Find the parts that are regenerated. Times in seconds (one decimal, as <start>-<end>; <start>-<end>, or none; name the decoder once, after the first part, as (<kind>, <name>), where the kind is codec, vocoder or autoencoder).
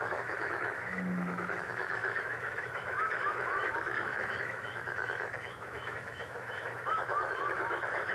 0.0-8.1 (autoencoder, DAC-VAE)